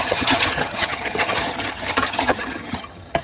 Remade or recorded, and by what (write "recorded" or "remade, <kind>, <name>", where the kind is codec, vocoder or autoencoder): remade, vocoder, HiFi-GAN